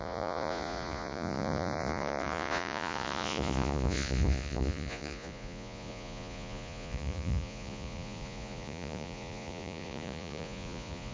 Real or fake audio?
fake